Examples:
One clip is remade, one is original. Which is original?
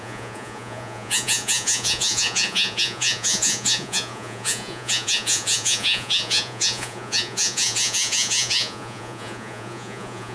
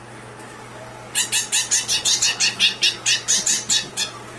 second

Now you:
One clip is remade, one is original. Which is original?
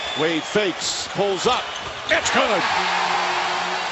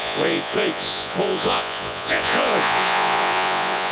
first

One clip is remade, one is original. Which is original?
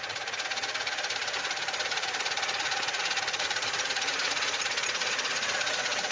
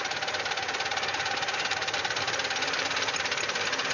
second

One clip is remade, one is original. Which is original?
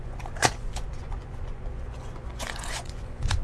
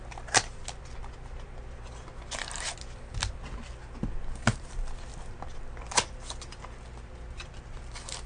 second